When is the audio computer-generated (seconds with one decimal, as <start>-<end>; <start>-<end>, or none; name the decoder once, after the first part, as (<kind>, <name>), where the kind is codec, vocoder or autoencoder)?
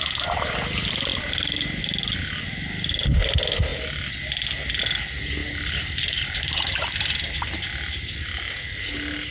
1.1-1.8 (vocoder, BigVGAN v2); 5.4-6.7